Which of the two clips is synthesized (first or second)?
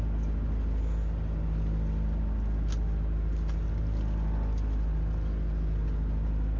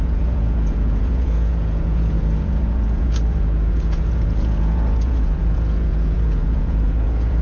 second